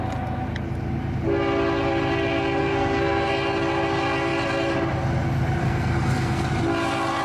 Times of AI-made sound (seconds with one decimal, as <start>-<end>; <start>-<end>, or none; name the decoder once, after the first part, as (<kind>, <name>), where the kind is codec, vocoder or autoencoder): 2.6-3.3 (codec, SNAC); 5.6-6.5